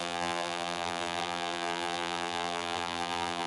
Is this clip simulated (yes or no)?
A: yes